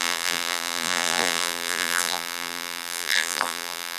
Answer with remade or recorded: remade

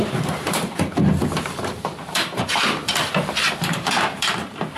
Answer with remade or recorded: remade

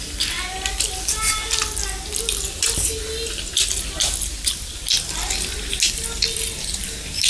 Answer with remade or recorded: recorded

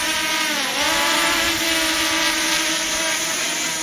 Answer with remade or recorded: recorded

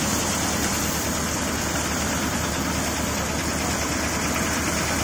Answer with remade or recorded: recorded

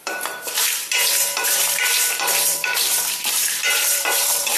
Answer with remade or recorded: remade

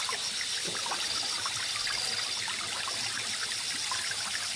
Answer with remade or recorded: recorded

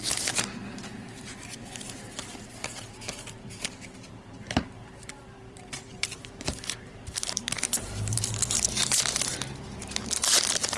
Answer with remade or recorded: remade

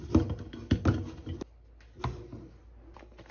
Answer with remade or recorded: recorded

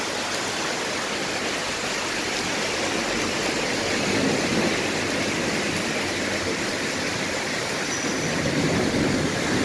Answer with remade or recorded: recorded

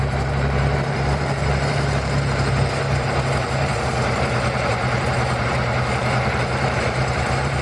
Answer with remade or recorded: remade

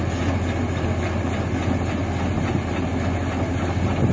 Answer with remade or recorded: recorded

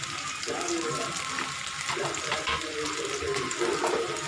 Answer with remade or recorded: recorded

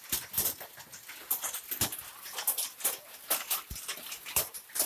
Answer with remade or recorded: recorded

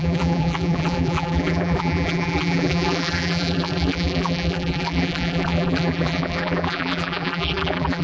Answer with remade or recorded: remade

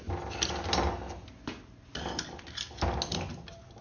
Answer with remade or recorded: recorded